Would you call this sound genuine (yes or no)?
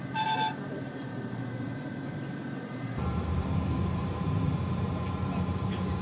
no